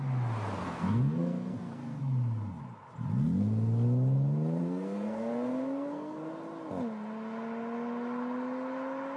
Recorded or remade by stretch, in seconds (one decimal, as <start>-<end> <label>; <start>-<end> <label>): 0.0-0.6 recorded; 0.6-2.0 remade; 2.0-4.6 recorded; 4.6-6.3 remade; 6.3-9.2 recorded